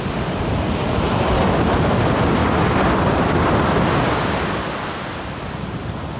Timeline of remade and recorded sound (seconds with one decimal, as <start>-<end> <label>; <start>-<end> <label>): 0.0-6.2 recorded